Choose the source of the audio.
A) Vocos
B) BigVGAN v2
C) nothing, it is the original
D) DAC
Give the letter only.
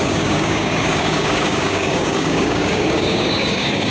D